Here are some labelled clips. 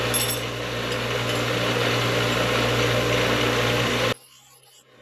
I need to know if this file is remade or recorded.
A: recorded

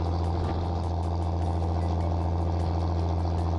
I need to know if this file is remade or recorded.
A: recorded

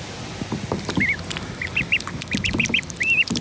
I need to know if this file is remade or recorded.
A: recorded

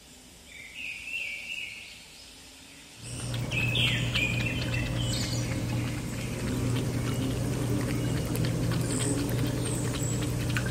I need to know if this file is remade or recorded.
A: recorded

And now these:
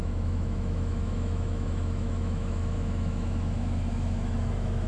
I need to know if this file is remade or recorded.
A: remade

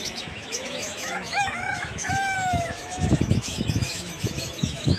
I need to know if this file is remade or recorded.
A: remade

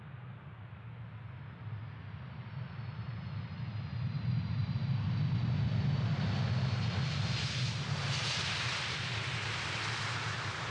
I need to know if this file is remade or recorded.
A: recorded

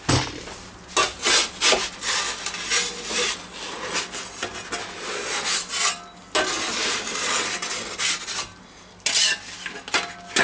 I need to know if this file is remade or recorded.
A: recorded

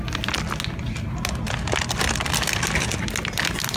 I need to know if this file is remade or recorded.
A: recorded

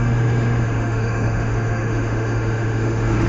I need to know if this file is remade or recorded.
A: remade